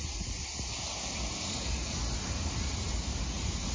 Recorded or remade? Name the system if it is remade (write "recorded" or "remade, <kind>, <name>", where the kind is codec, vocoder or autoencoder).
recorded